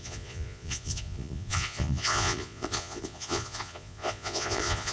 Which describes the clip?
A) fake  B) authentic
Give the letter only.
A